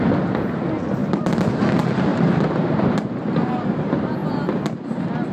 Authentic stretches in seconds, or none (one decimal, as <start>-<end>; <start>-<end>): 0.0-2.1; 3.2-5.3

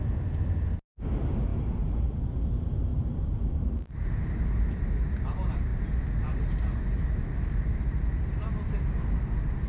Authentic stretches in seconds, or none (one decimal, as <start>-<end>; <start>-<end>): 0.0-1.5; 2.3-2.9; 4.8-9.7

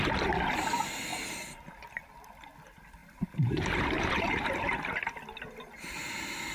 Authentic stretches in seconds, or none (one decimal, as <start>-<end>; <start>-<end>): 0.0-3.0; 5.1-6.5

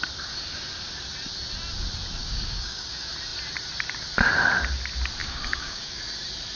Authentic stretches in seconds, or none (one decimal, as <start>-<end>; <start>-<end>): 0.0-2.2; 2.9-5.2; 6.0-6.6

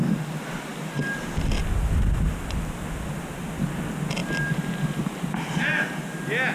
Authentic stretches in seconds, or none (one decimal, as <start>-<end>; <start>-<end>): 0.0-6.5